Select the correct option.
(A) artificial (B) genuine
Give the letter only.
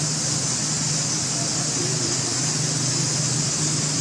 B